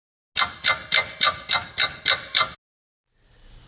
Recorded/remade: recorded